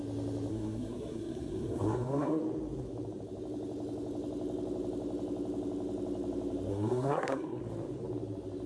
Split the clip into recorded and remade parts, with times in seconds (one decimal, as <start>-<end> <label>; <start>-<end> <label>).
0.0-0.5 recorded; 0.5-2.4 remade; 2.4-6.7 recorded; 6.7-7.6 remade; 7.6-8.7 recorded